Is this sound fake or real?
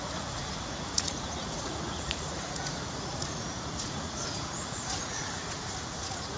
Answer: fake